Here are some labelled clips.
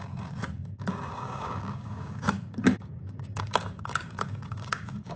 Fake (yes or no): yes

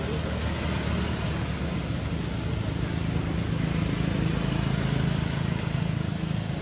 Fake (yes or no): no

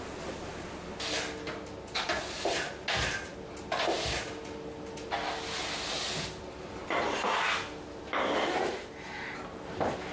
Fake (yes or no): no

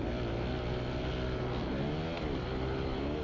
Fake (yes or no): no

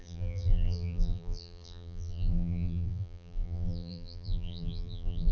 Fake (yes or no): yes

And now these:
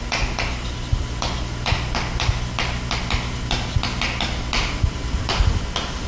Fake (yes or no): no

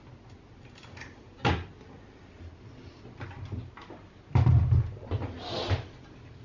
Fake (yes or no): no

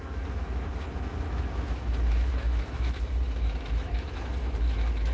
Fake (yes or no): yes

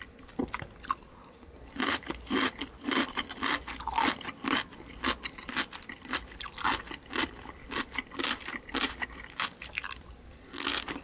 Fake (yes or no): no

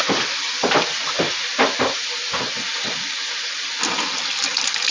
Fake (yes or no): yes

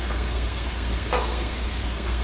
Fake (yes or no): yes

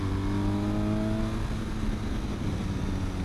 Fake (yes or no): no